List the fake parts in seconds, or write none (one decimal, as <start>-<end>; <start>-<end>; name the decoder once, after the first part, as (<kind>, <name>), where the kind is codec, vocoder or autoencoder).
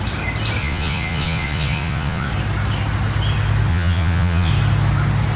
0.6-2.3 (vocoder, Vocos); 3.7-4.5